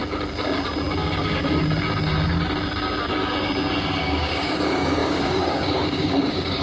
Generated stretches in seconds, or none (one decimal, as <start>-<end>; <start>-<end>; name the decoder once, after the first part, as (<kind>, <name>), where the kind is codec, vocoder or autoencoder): 4.0-6.6 (codec, DAC)